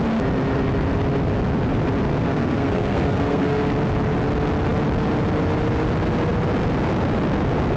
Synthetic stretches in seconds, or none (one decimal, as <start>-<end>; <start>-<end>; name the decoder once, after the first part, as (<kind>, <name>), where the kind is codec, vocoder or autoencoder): 2.1-3.6 (codec, SNAC)